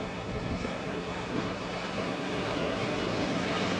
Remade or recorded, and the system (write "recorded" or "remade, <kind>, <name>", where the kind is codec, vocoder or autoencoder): remade, codec, SNAC